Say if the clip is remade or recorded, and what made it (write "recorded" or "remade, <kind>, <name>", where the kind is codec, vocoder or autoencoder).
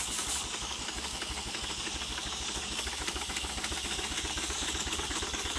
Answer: remade, codec, DAC